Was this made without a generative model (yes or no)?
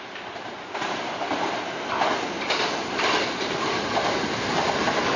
yes